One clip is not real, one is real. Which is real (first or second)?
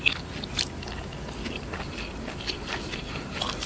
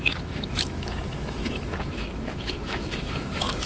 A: first